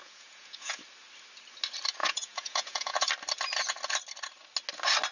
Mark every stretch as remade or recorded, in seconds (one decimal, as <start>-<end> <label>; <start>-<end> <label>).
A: 0.0-0.8 remade; 0.8-2.0 recorded; 2.0-3.1 remade; 3.1-5.1 recorded